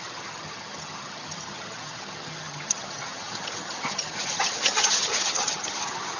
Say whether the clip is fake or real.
fake